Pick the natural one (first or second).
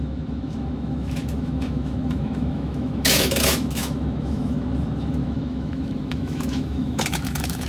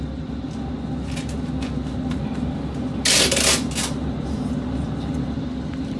second